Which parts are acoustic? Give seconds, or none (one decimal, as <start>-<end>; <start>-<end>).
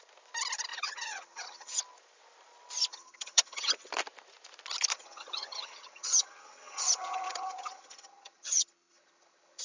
0.0-0.7; 1.8-2.9; 3.9-4.9